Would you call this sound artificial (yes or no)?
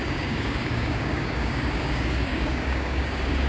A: yes